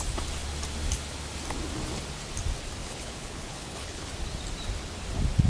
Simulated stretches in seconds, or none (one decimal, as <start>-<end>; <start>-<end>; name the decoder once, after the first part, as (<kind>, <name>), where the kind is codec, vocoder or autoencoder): 2.8-4.1 (codec, HILCodec)